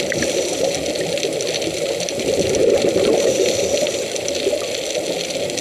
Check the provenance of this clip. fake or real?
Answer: real